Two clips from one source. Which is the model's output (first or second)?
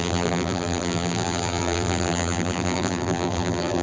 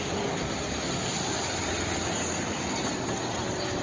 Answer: first